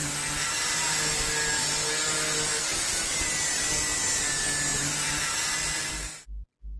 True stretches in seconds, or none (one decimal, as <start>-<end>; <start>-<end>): 0.0-4.7; 5.7-6.8